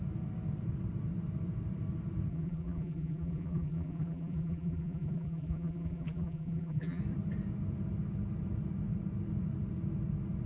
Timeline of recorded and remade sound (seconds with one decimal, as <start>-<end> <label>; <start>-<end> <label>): 0.0-2.3 recorded; 2.3-7.0 remade; 7.0-10.5 recorded